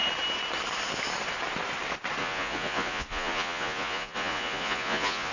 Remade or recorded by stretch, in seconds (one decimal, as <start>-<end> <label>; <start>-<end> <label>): 0.0-2.2 recorded; 2.2-5.3 remade